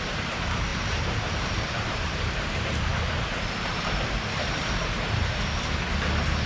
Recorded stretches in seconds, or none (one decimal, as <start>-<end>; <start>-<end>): 2.9-3.7; 5.2-6.5